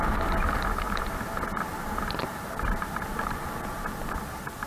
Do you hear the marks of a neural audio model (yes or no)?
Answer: no